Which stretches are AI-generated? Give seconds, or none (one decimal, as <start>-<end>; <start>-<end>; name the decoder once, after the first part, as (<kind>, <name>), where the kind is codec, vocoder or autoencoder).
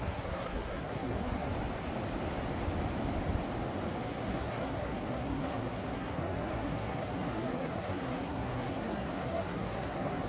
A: 0.0-1.5 (codec, SNAC); 4.0-10.3